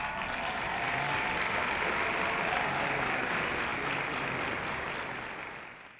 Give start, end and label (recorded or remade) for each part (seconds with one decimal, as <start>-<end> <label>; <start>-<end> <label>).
0.0-6.0 recorded

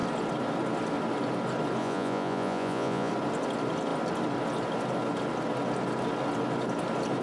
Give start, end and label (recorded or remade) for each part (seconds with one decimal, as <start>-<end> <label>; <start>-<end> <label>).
0.0-1.8 recorded; 1.8-3.1 remade; 3.1-7.2 recorded

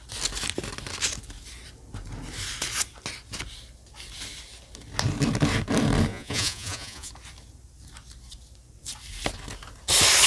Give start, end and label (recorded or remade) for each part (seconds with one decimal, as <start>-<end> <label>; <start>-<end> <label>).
0.0-6.1 recorded; 6.1-7.1 remade; 7.1-10.3 recorded

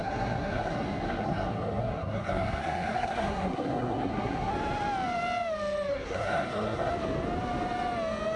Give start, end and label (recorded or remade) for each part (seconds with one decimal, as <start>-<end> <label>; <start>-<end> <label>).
0.0-4.5 remade; 4.5-5.9 recorded; 5.9-6.9 remade; 6.9-8.4 recorded

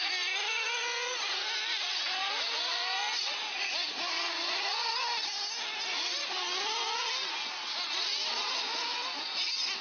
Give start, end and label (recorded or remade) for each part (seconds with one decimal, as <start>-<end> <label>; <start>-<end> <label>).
0.0-9.8 recorded

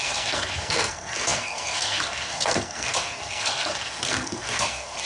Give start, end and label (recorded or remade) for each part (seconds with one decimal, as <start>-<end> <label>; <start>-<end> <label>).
0.0-5.1 remade

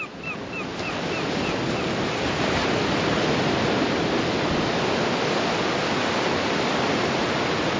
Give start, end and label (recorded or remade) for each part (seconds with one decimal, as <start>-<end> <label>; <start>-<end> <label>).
0.0-7.8 recorded